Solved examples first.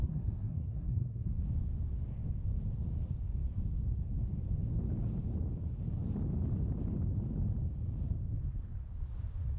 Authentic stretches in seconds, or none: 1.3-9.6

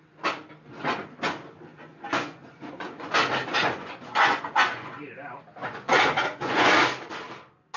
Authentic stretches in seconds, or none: 0.0-1.8; 3.1-3.6; 5.1-5.6; 6.7-7.8

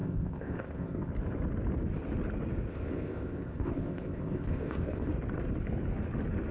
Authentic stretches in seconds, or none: 1.1-2.7; 5.1-6.5